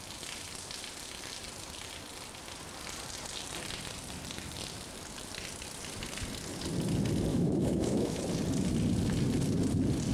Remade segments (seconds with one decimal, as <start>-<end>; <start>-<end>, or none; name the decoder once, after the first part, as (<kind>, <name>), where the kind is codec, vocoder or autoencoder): 7.3-8.2 (autoencoder, DAC-VAE)